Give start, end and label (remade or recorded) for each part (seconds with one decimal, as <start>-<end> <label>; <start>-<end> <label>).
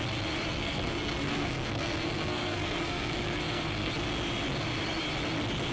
0.0-0.5 recorded; 0.5-3.9 remade; 3.9-5.7 recorded